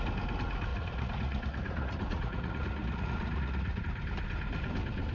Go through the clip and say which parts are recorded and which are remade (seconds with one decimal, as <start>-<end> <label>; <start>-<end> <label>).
0.0-0.7 recorded; 0.7-3.8 remade; 3.8-5.1 recorded

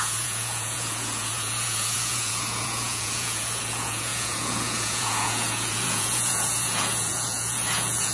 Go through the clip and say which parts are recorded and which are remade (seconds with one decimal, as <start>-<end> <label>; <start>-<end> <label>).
0.0-8.1 remade

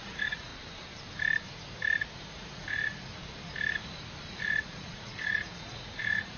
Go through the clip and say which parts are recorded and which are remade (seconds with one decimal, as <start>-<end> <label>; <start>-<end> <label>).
0.0-0.5 remade; 0.5-2.2 recorded; 2.2-3.2 remade; 3.2-4.4 recorded; 4.4-6.4 remade

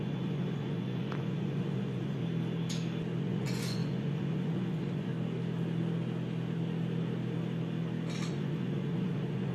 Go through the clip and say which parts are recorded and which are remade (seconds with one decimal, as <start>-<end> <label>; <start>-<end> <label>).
0.0-2.2 remade; 2.2-3.2 recorded; 3.2-5.1 remade; 5.1-8.3 recorded; 8.3-9.5 remade

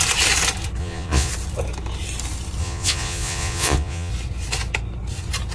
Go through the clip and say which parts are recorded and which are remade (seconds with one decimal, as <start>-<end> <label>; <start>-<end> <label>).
0.0-0.8 recorded; 0.8-1.3 remade; 1.3-2.6 recorded; 2.6-4.1 remade; 4.1-5.5 recorded